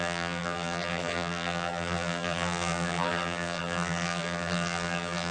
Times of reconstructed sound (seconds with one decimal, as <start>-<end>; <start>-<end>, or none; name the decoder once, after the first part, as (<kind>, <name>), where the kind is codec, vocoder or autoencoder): 0.0-5.3 (vocoder, BigVGAN v2)